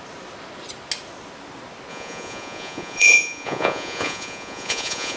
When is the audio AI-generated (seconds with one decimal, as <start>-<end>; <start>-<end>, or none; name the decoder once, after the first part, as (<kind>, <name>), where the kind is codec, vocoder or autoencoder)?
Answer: 1.9-5.2 (vocoder, Vocos)